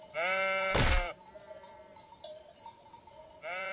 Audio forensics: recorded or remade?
remade